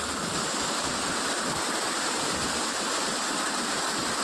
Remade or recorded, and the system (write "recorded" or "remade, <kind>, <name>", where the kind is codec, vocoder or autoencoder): recorded